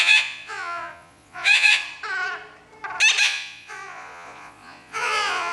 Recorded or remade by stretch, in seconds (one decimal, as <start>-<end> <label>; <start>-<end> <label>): 0.0-1.8 remade; 1.8-3.2 recorded; 3.2-5.5 remade